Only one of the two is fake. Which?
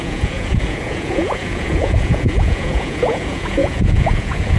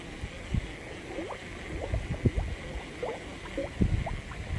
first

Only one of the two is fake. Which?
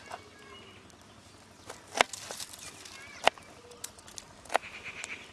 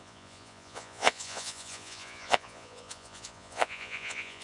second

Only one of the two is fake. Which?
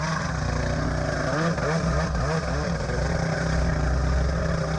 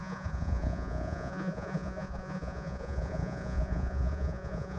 second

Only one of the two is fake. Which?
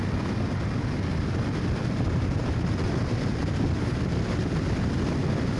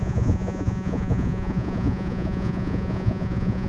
second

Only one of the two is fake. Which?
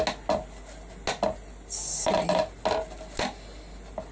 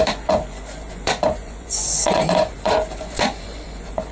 second